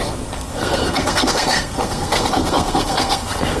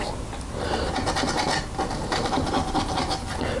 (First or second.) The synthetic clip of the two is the first